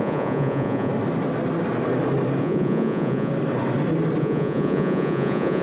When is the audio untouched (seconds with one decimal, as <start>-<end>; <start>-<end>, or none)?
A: 0.9-2.4; 3.3-4.2